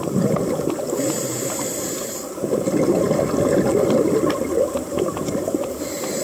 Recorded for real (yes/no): yes